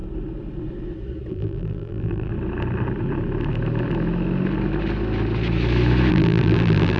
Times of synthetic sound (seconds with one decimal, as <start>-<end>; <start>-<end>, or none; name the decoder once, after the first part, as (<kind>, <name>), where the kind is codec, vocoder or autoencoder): 1.3-2.3 (vocoder, BigVGAN v2); 6.1-7.0

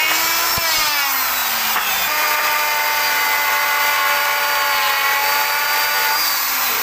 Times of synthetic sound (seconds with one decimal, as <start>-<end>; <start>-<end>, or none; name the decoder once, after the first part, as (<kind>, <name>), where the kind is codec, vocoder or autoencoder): 1.4-1.9 (vocoder, BigVGAN v2); 6.0-6.8

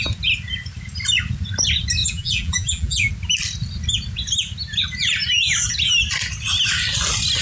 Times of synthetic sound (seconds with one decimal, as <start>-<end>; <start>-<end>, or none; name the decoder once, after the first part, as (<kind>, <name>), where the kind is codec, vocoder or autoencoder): 2.0-3.1 (vocoder, BigVGAN v2)

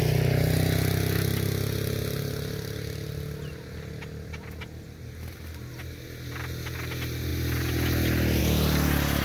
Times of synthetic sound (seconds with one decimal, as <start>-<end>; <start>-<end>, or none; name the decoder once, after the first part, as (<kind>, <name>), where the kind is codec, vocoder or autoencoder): none

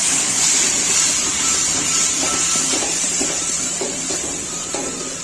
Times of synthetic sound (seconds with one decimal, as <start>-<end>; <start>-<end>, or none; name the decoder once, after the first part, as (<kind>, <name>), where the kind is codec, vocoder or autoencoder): 0.0-1.9 (vocoder, BigVGAN v2); 3.0-5.2